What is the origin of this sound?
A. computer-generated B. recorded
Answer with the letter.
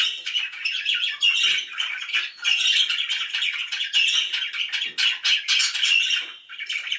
B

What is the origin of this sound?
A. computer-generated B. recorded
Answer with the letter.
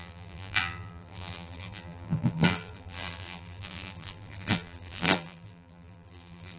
A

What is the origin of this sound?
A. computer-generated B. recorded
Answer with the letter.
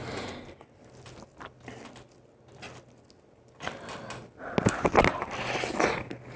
B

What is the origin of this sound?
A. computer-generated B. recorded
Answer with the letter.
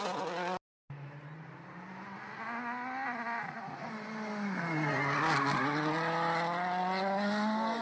B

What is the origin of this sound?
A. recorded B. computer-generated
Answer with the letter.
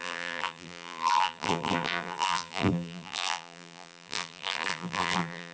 B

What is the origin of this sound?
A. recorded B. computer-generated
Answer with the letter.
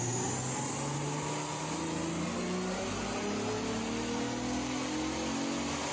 A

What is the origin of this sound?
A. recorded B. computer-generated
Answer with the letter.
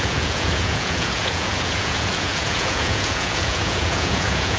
B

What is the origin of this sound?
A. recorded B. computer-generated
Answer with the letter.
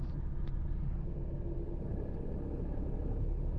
A